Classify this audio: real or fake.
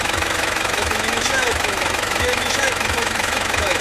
fake